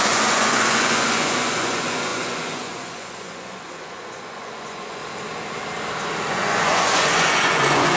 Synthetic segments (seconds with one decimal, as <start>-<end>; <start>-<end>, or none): 0.0-5.0; 6.3-8.0

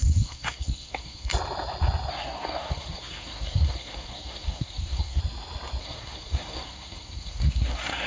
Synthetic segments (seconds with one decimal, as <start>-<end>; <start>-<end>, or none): 0.0-1.3; 2.1-5.2; 5.8-8.1

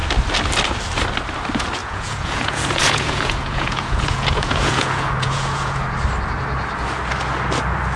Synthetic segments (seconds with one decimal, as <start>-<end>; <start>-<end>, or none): 1.8-5.8

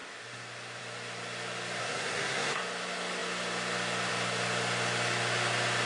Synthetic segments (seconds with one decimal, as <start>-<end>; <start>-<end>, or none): 1.8-2.6